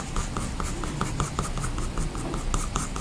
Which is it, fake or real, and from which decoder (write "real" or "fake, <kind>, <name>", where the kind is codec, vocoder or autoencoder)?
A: real